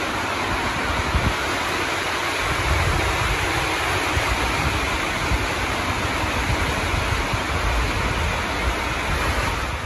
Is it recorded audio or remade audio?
recorded